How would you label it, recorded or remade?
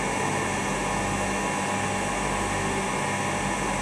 recorded